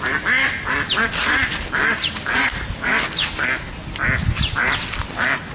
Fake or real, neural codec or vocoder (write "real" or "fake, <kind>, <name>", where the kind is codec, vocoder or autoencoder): real